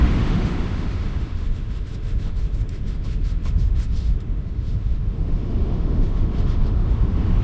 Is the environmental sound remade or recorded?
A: remade